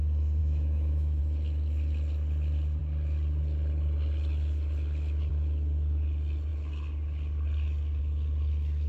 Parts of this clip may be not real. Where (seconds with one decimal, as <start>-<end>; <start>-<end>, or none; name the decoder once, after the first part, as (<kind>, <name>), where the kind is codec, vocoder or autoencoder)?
0.4-1.2 (autoencoder, DAC-VAE)